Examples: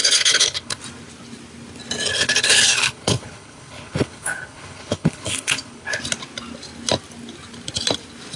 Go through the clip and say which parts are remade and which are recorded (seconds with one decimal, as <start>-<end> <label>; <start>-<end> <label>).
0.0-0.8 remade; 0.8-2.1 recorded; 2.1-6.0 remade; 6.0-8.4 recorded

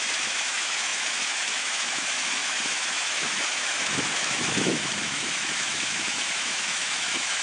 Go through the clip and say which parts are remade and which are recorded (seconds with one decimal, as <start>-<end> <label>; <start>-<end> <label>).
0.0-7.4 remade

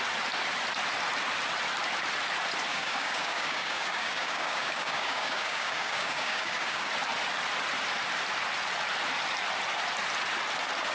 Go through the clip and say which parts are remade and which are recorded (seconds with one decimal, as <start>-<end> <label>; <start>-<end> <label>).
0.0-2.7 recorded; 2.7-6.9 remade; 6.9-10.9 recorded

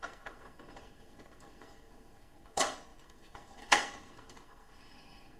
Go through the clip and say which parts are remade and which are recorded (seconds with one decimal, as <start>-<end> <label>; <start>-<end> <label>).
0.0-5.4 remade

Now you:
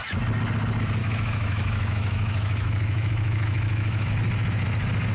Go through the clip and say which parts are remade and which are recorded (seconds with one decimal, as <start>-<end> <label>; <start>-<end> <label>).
0.0-1.0 recorded; 1.0-4.1 remade; 4.1-5.1 recorded

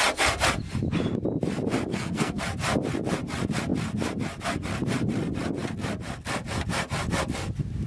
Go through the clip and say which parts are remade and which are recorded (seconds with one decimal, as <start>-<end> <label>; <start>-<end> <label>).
0.0-1.9 recorded; 1.9-2.4 remade; 2.4-7.9 recorded

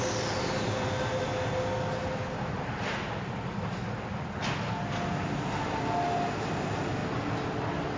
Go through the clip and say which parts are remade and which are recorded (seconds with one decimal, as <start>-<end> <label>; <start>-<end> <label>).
0.0-8.0 recorded